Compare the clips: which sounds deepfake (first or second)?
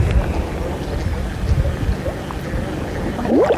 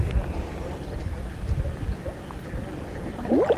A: second